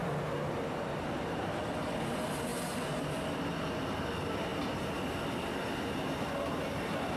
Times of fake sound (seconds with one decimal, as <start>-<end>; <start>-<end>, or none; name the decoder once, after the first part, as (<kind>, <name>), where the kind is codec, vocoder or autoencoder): none